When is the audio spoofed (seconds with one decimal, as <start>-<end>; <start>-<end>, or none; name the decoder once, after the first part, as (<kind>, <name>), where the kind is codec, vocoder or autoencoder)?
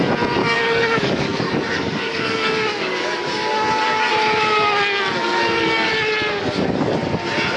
0.4-4.1 (codec, DAC); 5.3-5.9